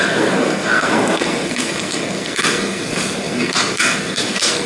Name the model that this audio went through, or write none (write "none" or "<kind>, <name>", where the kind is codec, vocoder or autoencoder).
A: codec, SNAC